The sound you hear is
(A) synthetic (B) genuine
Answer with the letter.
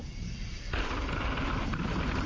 B